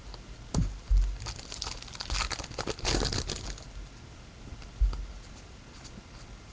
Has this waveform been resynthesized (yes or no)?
no